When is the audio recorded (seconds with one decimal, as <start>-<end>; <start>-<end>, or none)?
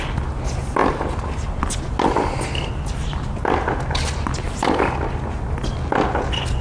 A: 0.0-6.6